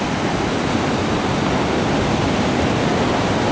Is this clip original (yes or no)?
yes